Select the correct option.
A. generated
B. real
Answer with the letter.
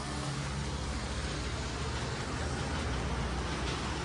B